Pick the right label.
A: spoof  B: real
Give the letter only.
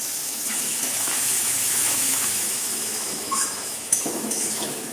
A